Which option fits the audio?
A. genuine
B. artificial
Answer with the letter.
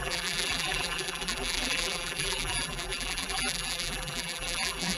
B